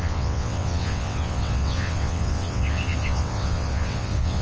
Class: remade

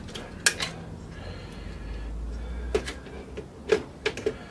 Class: recorded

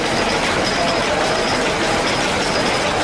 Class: recorded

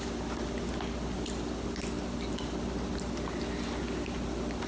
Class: recorded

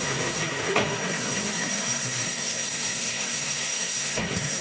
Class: remade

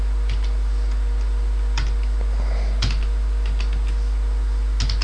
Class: recorded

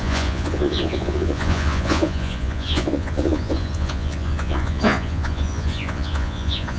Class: remade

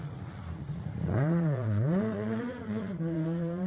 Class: remade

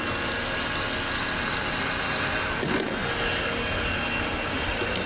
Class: recorded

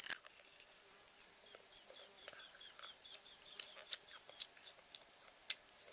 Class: recorded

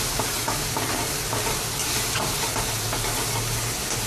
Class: recorded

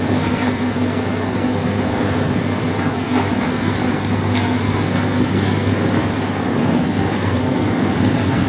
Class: remade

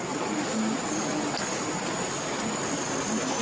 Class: recorded